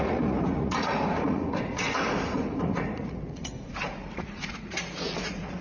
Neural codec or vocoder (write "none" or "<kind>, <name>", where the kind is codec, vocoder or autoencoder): vocoder, Vocos